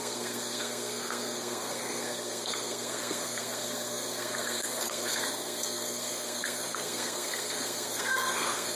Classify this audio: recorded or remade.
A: remade